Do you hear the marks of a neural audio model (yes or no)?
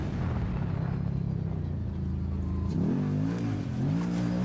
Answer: no